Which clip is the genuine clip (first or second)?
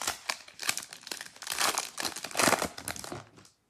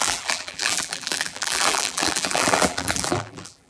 first